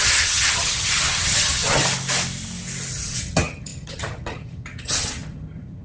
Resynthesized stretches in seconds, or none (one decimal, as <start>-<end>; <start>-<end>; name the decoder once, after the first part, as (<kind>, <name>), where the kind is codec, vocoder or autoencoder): 0.0-1.8 (vocoder, HiFi-GAN); 2.9-5.8